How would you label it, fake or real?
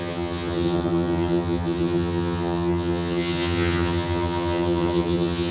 fake